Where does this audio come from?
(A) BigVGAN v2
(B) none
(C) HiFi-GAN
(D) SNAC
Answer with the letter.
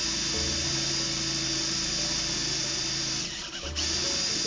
B